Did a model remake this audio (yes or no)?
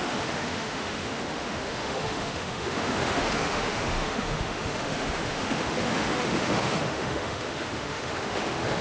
yes